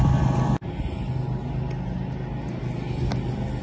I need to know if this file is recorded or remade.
recorded